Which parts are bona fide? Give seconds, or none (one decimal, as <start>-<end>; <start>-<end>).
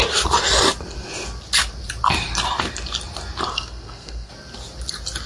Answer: 0.0-3.5; 4.3-5.3